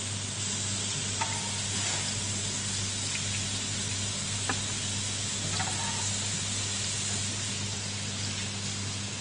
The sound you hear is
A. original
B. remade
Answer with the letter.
A